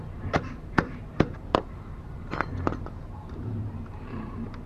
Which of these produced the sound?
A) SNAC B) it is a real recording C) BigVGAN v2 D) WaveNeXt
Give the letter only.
C